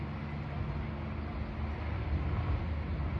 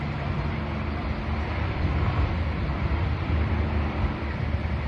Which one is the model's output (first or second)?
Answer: second